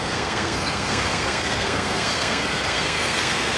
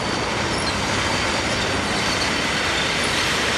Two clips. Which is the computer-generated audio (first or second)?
first